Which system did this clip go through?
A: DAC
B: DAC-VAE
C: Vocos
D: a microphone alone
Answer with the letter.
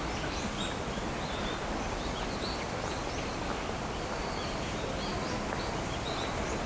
D